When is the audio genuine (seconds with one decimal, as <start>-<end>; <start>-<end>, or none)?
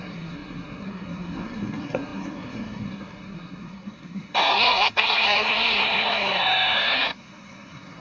none